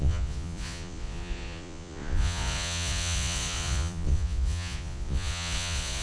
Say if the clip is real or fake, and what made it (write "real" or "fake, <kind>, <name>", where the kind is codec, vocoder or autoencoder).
fake, vocoder, Vocos